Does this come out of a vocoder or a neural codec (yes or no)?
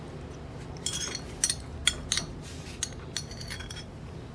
no